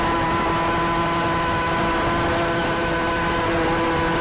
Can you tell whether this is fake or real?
real